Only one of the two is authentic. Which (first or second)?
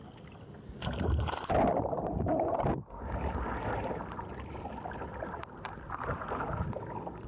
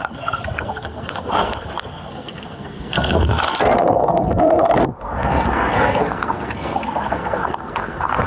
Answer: first